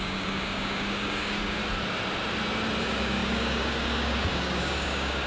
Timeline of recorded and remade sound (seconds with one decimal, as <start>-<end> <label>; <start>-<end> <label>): 0.0-1.6 remade; 1.6-2.8 recorded; 2.8-5.3 remade